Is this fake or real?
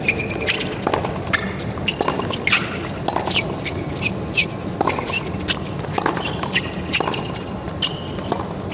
real